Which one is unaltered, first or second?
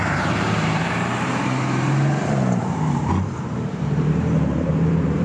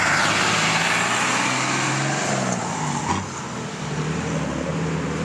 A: second